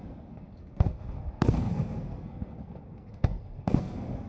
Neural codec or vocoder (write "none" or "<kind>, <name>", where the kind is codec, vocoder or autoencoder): codec, SNAC